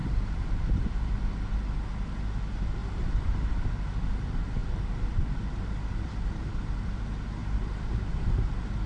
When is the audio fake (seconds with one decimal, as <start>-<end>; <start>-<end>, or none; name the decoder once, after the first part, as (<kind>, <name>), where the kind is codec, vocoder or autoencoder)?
0.0-1.1 (vocoder, BigVGAN v2); 2.8-3.5; 4.6-7.0; 7.4-8.5